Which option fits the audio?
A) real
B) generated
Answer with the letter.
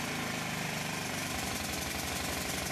B